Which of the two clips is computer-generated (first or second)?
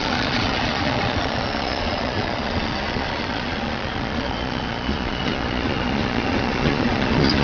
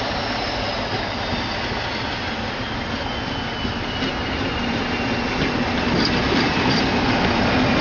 first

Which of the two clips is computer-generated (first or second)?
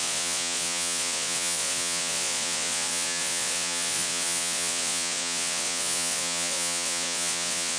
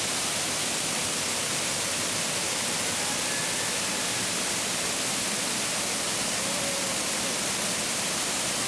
first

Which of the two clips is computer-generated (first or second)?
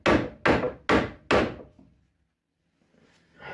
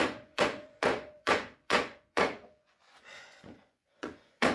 second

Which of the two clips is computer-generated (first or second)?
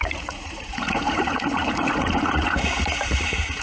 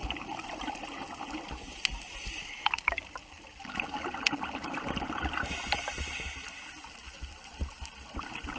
first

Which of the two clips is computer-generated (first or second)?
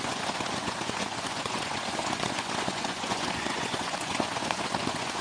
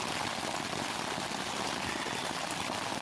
first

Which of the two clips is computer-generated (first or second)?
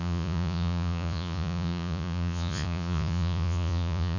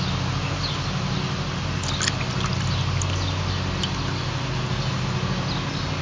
first